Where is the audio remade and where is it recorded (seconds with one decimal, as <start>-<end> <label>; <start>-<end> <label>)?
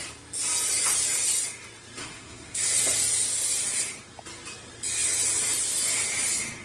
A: 0.0-2.0 recorded; 2.0-2.8 remade; 2.8-6.6 recorded